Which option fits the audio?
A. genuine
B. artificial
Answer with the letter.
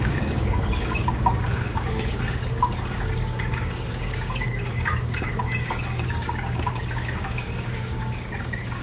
B